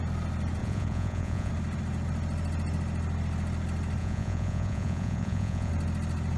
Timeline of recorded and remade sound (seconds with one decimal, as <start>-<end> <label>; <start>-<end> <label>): 0.0-0.6 recorded; 0.6-1.5 remade; 1.5-4.0 recorded; 4.0-5.7 remade; 5.7-6.4 recorded